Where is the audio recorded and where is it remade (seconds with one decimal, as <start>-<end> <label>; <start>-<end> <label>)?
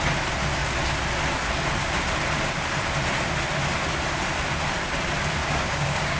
0.0-5.4 recorded; 5.4-6.2 remade